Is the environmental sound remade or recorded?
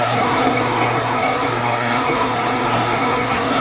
remade